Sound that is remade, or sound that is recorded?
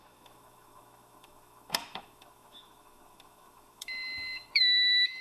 remade